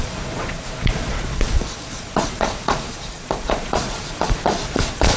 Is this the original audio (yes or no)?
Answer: no